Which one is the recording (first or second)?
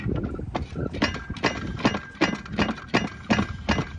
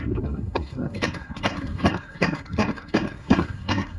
first